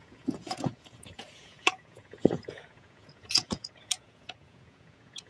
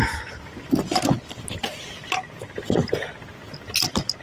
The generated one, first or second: first